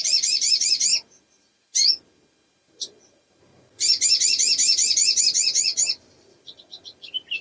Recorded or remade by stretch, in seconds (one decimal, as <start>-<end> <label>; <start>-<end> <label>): 0.0-5.7 recorded; 5.7-6.6 remade; 6.6-7.4 recorded